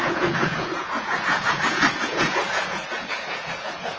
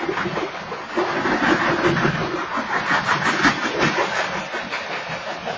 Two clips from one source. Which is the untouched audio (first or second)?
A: second